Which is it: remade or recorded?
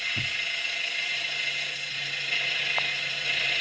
recorded